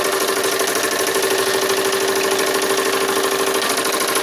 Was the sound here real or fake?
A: real